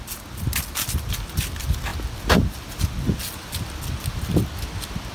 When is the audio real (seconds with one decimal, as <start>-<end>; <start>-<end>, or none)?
0.0-5.1